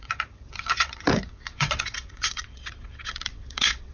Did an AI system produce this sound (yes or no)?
yes